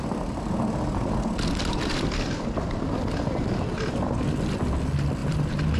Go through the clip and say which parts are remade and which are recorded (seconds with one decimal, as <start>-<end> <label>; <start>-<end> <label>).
0.0-5.2 recorded; 5.2-5.8 remade